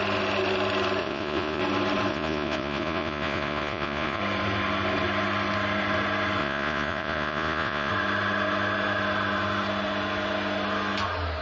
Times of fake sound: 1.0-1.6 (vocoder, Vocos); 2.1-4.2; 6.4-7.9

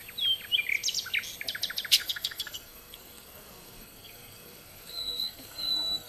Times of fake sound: 2.0-6.1 (codec, SNAC)

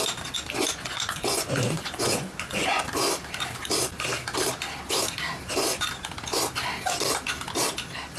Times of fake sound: 0.6-2.8 (vocoder, Vocos)

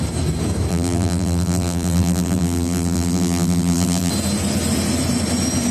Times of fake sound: 0.7-4.1 (vocoder, BigVGAN v2)

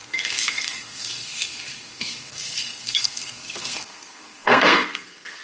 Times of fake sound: 0.0-5.4 (codec, SNAC)

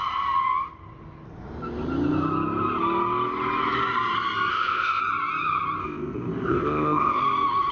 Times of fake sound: 4.5-5.0 (codec, ZipCodec); 5.8-7.2

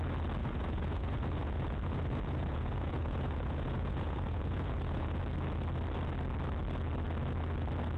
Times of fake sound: 0.4-5.2 (vocoder, Vocos)

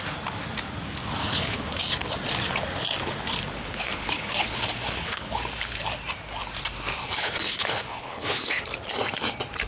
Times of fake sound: 1.2-1.8 (codec, HILCodec); 3.6-5.4; 7.2-8.6